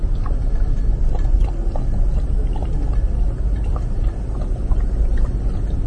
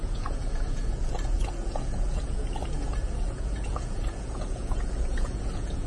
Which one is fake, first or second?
second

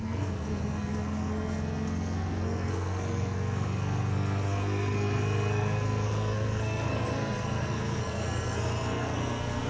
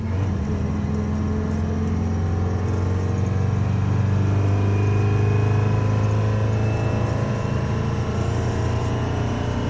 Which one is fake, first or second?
first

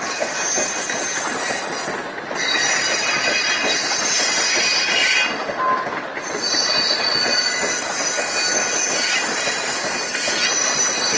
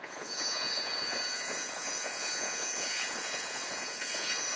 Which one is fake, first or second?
second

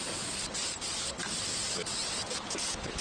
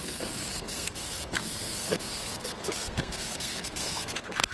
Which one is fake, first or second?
second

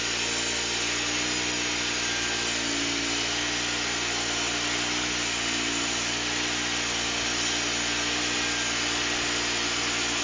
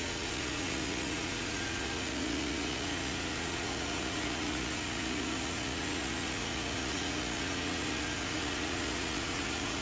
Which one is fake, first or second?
second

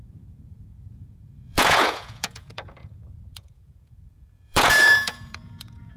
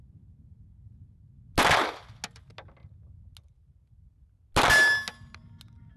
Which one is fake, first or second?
first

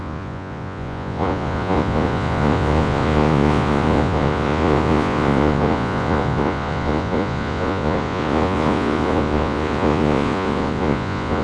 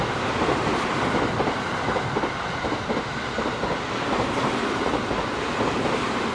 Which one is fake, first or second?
first